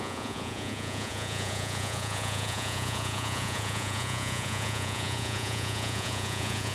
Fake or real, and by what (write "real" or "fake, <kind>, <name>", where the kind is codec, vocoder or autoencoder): fake, vocoder, Vocos